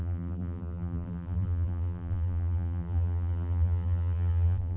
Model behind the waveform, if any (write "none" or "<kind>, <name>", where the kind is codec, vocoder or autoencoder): vocoder, BigVGAN v2